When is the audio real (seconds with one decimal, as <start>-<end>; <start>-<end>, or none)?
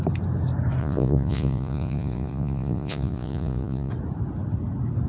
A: 0.0-0.8; 3.9-5.1